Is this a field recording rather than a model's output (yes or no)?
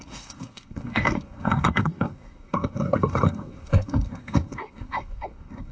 no